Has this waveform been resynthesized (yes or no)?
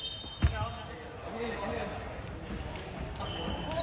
no